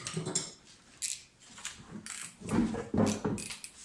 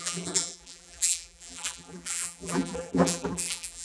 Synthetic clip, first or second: second